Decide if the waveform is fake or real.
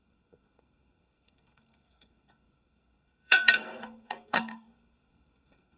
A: fake